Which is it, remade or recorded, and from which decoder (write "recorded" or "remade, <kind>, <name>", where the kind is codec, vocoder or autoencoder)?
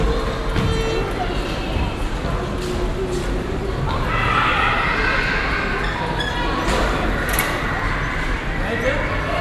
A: recorded